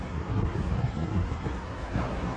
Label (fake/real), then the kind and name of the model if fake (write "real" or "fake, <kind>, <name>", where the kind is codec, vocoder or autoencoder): fake, codec, SNAC